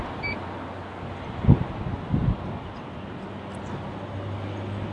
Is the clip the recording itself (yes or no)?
yes